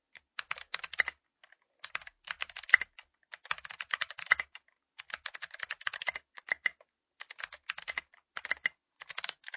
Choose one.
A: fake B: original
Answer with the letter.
B